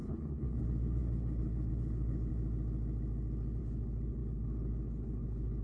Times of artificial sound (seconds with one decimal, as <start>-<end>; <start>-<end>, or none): 0.0-2.3; 3.6-5.6